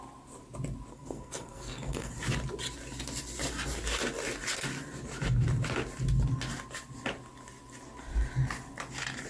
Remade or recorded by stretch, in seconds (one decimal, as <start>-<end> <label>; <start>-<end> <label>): 0.0-0.9 recorded; 0.9-2.1 remade; 2.1-9.3 recorded